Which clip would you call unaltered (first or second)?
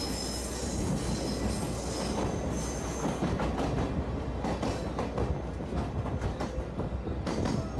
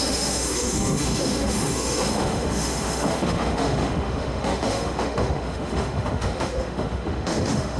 first